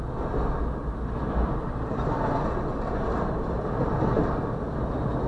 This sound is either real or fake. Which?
real